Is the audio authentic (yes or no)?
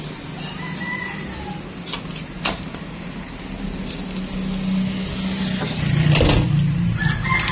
yes